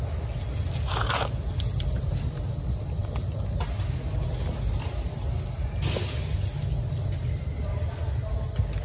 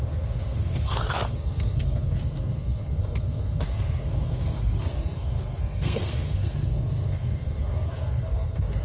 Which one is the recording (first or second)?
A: first